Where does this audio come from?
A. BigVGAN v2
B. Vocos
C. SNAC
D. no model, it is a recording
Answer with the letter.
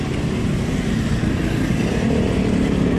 D